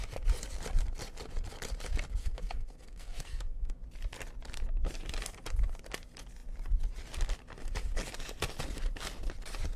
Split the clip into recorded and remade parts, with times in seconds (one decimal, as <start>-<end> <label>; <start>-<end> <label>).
0.0-2.2 recorded; 2.2-3.7 remade; 3.7-9.8 recorded